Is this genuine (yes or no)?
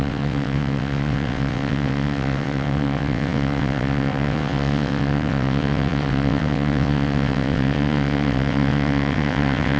no